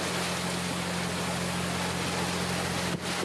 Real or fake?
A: real